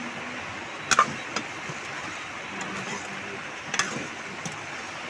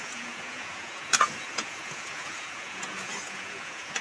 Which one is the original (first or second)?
first